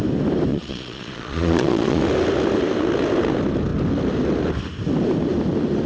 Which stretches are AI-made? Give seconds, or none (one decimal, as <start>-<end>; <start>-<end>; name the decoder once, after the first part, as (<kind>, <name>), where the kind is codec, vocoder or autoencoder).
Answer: 0.5-2.0 (vocoder, Vocos)